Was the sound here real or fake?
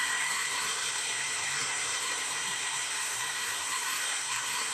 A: fake